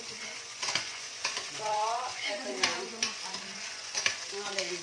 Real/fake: fake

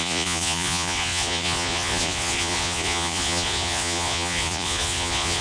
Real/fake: fake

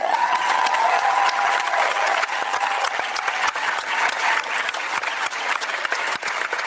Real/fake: fake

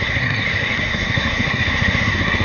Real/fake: fake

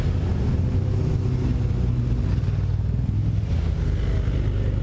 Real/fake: real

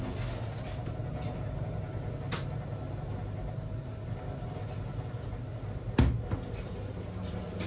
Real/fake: real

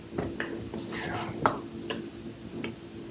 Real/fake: real